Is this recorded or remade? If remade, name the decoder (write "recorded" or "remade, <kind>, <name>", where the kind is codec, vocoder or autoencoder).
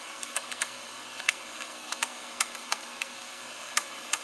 remade, codec, SNAC